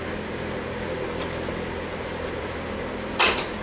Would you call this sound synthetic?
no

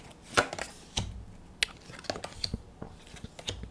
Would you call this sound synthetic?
no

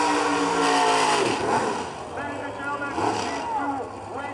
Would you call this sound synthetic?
no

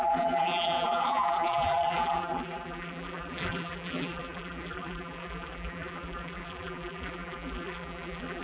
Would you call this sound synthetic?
yes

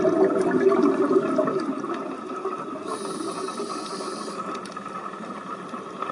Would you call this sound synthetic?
no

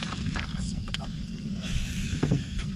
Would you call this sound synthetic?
yes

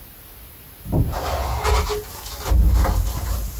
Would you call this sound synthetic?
no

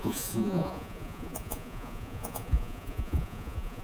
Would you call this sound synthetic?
yes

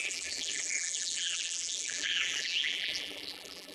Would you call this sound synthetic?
yes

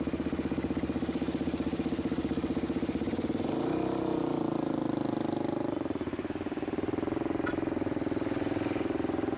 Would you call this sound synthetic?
no